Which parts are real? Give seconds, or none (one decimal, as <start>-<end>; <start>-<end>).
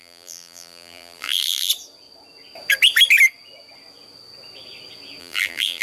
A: 1.7-5.2